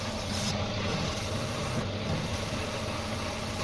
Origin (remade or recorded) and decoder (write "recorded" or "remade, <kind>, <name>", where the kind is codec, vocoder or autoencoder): recorded